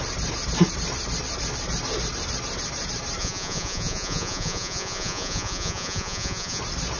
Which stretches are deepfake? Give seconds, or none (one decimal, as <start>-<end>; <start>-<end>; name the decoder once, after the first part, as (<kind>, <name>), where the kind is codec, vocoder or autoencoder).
3.2-6.6 (vocoder, Vocos)